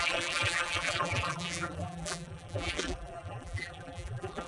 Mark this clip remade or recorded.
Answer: remade